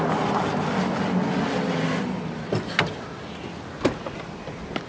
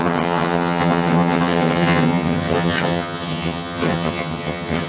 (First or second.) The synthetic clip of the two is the second